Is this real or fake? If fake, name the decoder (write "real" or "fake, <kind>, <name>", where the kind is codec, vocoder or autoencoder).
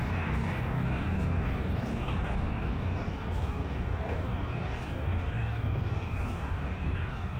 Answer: fake, codec, DAC